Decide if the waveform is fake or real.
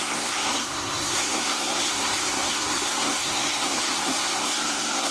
fake